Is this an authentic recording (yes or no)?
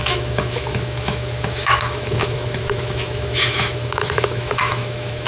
no